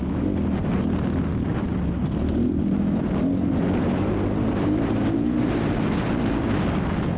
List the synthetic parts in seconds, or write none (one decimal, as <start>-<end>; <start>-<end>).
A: 1.7-5.0